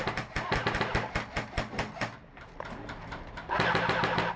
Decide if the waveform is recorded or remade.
recorded